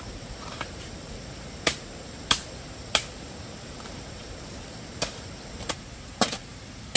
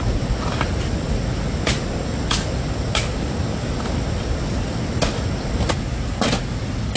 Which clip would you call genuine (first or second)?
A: second